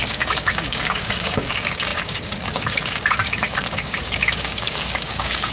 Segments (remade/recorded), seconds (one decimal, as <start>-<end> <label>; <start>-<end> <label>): 0.0-5.5 remade